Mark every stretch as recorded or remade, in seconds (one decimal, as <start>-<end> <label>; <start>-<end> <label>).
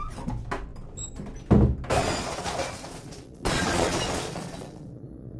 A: 0.0-2.0 recorded; 2.0-5.4 remade